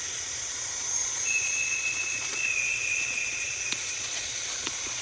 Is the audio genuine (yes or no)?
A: no